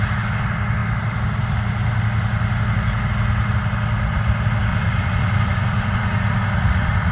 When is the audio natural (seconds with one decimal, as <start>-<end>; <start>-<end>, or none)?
0.0-4.7